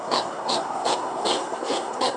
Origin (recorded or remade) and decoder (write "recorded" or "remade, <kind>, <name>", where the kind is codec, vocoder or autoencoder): remade, codec, SNAC